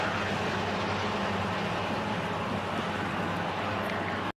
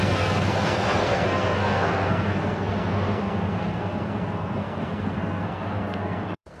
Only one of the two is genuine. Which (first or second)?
first